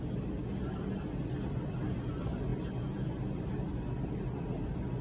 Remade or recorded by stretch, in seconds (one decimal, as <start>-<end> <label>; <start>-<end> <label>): 0.0-5.0 recorded